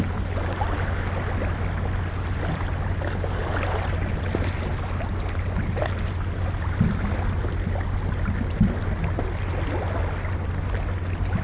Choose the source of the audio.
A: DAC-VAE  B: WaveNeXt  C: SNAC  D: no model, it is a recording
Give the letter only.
D